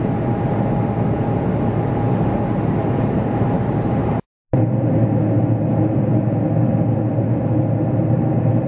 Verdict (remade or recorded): recorded